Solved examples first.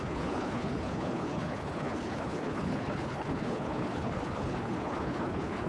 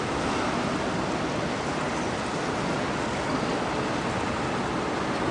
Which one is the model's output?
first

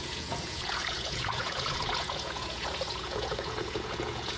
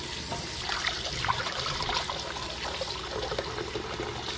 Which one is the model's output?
first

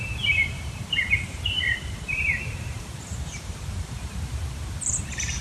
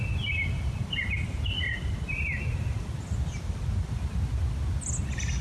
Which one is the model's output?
first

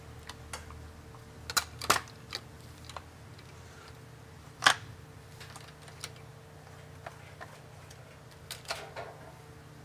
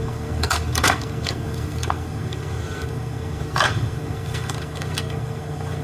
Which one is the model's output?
second